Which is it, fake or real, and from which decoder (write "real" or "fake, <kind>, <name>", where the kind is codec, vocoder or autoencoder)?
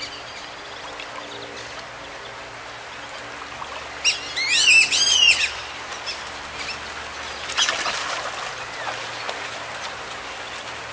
real